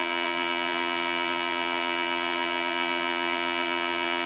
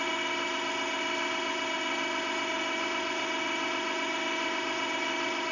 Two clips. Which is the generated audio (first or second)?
first